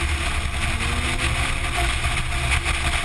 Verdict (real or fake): real